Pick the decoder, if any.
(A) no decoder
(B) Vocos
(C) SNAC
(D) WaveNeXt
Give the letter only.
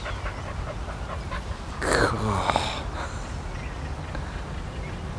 A